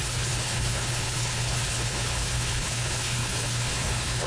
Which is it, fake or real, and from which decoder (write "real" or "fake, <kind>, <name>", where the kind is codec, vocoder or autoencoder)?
fake, codec, HILCodec